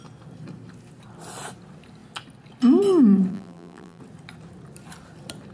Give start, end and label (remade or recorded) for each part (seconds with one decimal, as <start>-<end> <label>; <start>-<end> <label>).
0.0-3.3 recorded; 3.3-4.0 remade; 4.0-5.5 recorded